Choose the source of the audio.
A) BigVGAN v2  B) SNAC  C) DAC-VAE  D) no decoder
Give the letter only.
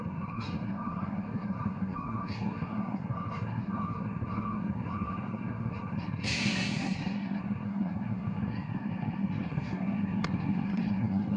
B